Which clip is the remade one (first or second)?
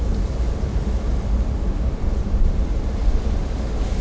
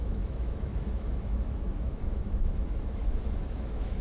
second